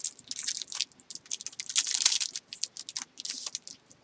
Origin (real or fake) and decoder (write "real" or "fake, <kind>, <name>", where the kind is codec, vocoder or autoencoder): real